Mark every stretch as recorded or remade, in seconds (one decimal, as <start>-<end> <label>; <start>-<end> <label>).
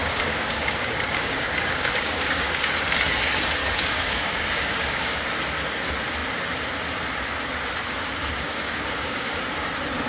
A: 0.0-2.7 remade; 2.7-3.6 recorded; 3.6-5.2 remade; 5.2-8.2 recorded; 8.2-9.4 remade; 9.4-10.1 recorded